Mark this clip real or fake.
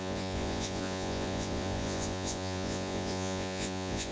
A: fake